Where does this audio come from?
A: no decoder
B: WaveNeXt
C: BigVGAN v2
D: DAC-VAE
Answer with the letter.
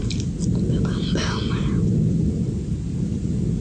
A